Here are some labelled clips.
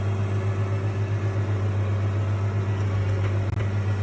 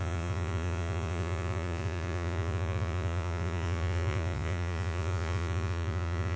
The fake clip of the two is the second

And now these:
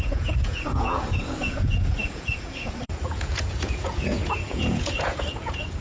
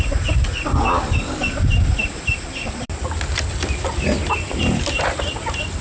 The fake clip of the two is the first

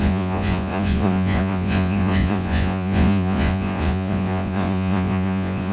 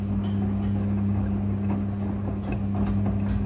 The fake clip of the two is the first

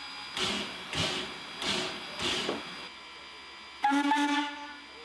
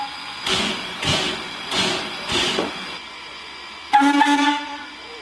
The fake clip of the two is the second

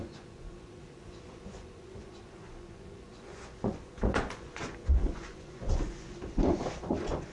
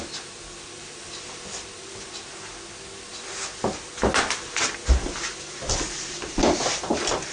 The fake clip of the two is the first